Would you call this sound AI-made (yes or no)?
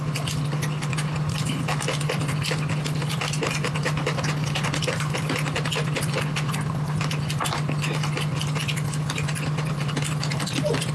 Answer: no